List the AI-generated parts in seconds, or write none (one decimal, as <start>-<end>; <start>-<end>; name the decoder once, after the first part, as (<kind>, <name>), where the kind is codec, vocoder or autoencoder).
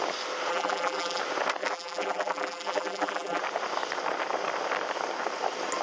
0.5-1.2 (vocoder, BigVGAN v2); 1.6-3.4